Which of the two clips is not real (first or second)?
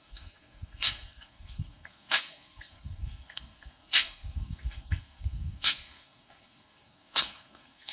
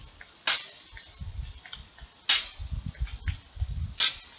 first